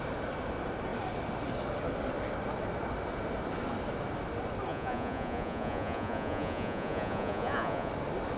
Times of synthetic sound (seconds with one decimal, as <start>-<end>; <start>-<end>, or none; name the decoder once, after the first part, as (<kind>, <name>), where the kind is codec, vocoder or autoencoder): 4.7-7.9 (vocoder, Vocos)